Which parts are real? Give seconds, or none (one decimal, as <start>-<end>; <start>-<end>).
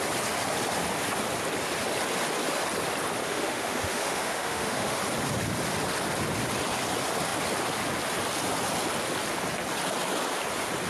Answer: 0.0-3.2; 5.0-10.9